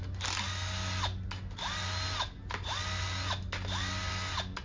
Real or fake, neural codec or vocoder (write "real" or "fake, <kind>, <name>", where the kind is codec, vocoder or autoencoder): real